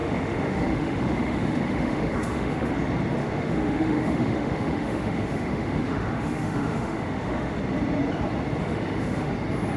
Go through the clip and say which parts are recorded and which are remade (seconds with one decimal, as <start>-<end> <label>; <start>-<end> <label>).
0.0-2.7 remade; 2.7-3.2 recorded; 3.2-7.6 remade; 7.6-8.6 recorded; 8.6-9.3 remade; 9.3-9.8 recorded